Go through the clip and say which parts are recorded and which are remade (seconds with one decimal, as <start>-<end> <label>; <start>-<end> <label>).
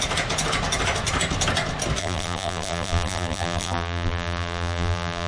0.0-2.0 recorded; 2.0-5.3 remade